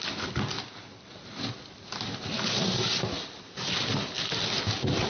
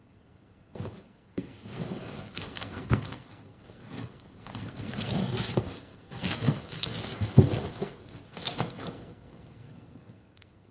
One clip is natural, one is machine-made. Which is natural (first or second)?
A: first